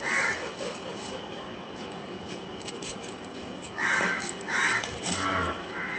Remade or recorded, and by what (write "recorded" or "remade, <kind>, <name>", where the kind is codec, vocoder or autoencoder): remade, codec, DAC